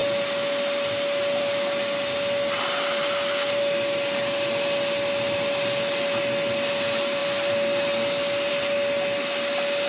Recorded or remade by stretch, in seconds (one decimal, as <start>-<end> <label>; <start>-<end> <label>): 0.0-9.9 recorded